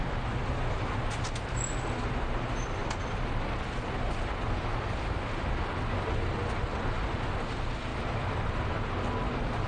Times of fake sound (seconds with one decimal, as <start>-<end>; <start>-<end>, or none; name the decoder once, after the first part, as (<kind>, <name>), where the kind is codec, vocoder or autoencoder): 7.9-8.8 (vocoder, BigVGAN v2)